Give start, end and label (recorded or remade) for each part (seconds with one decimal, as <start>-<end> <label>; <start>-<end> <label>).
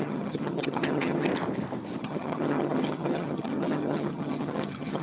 0.0-1.3 remade; 1.3-2.0 recorded; 2.0-5.0 remade